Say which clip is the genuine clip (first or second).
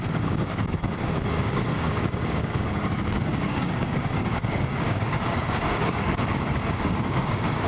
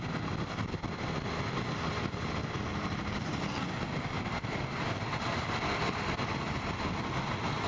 second